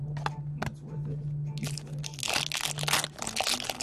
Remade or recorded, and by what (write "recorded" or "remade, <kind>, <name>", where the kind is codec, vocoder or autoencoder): recorded